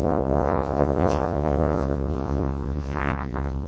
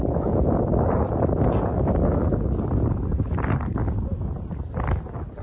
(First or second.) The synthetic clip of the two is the first